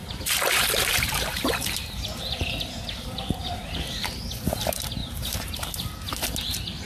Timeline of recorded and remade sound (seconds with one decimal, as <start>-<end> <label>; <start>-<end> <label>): 0.0-4.1 remade; 4.1-5.0 recorded; 5.0-5.7 remade; 5.7-6.9 recorded